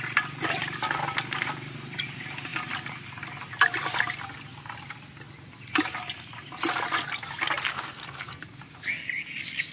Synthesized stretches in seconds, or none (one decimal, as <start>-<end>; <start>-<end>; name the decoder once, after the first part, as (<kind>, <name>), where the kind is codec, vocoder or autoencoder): 7.7-8.4 (codec, SNAC)